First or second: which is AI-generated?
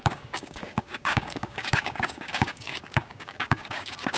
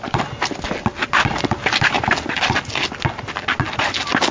first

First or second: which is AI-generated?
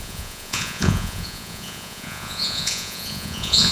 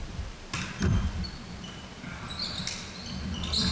first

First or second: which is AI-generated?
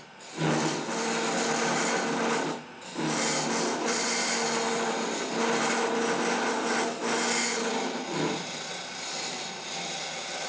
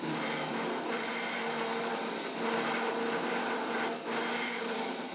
second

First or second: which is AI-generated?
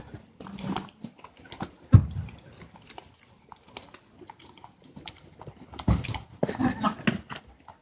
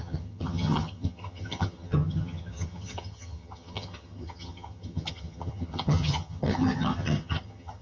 second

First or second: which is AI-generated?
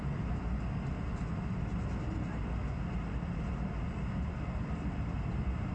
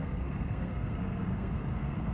second